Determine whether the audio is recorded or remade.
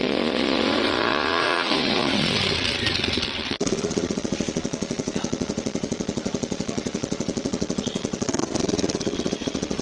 remade